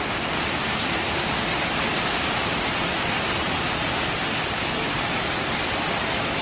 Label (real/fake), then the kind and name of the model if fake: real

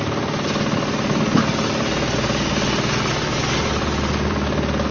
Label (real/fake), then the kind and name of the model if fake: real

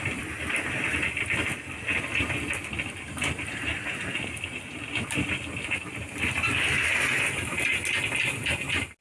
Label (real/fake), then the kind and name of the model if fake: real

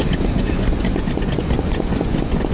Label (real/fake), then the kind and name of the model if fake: fake, vocoder, Vocos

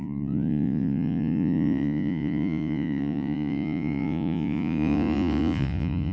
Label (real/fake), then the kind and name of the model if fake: fake, vocoder, Vocos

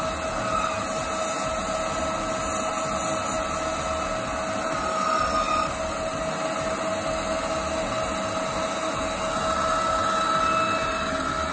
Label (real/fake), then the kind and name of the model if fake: real